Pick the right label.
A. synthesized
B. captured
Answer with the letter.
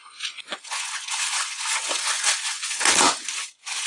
A